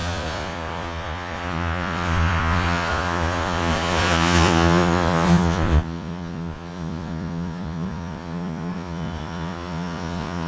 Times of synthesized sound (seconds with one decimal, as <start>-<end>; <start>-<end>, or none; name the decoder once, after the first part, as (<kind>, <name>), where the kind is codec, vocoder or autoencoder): 0.0-10.5 (vocoder, Vocos)